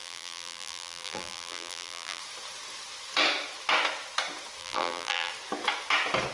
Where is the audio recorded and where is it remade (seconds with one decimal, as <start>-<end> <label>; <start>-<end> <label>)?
0.0-2.2 remade; 2.2-4.6 recorded; 4.6-5.3 remade; 5.3-6.3 recorded